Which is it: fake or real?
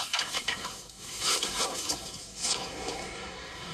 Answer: fake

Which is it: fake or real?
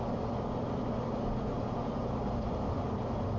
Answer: fake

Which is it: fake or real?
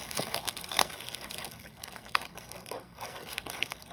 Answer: fake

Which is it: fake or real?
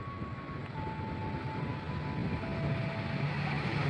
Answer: real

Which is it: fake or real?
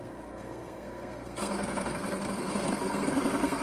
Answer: fake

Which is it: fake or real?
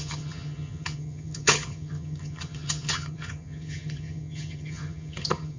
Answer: fake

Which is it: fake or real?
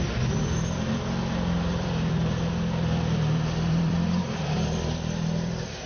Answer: fake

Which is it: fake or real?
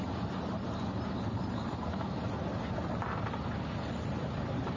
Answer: real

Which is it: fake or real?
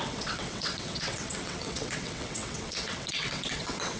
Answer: fake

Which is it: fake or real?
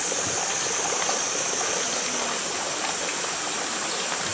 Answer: real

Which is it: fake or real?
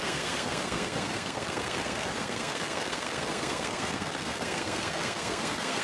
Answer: fake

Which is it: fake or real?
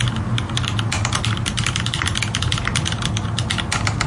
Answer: real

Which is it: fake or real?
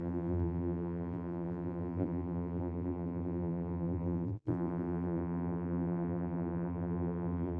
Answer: fake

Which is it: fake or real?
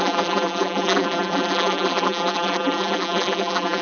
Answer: fake